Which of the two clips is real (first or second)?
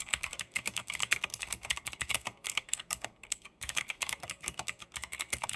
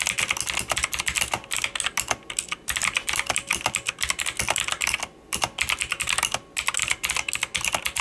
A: second